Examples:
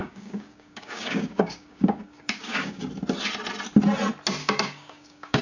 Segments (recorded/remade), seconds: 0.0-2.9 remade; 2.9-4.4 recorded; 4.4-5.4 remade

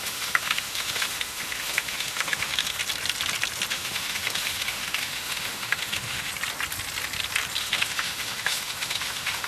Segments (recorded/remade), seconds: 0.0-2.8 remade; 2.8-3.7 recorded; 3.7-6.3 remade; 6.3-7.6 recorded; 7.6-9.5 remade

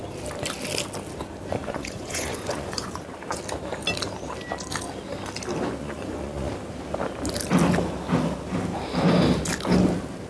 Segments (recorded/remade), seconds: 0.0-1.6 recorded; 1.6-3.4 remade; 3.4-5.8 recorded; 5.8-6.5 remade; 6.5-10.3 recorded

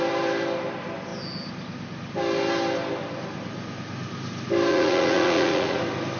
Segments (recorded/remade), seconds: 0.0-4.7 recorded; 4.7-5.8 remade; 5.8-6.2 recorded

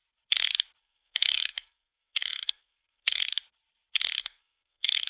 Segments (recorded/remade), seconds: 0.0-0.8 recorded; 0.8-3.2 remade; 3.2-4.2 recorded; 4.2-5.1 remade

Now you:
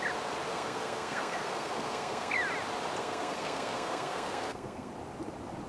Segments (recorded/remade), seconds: 0.0-0.5 recorded; 0.5-2.3 remade; 2.3-3.0 recorded; 3.0-4.9 remade; 4.9-5.7 recorded

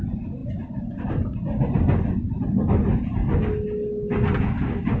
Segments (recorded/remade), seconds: 0.0-5.0 recorded

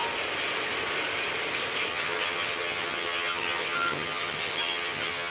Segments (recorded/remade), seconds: 0.0-1.9 recorded; 1.9-5.3 remade